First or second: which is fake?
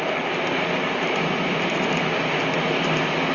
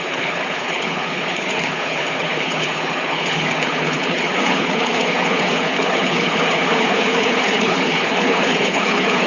second